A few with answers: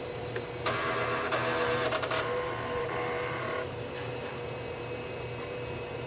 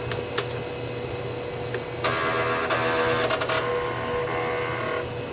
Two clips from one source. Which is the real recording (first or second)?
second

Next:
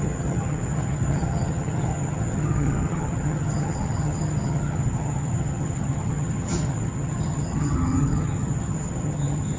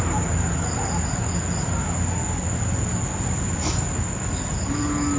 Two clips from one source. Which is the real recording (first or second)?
second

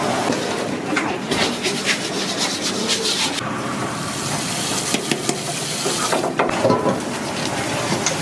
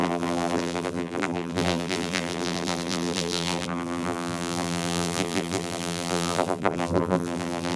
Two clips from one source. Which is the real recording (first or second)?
first